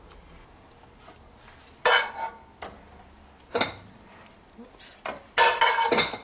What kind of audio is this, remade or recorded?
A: recorded